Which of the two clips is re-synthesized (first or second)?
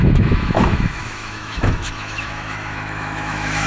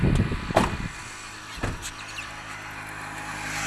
first